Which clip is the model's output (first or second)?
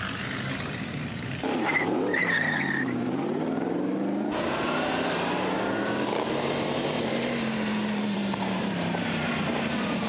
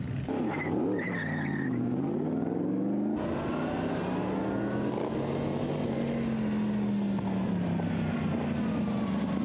first